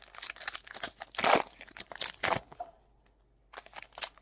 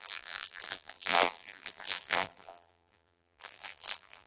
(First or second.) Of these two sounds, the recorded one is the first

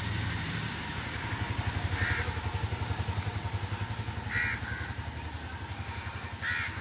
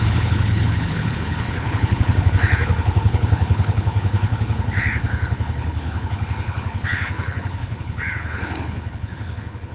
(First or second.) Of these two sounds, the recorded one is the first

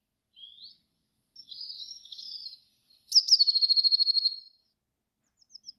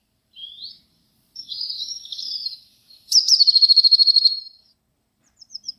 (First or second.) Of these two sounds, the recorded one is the first